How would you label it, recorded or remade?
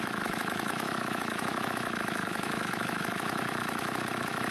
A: remade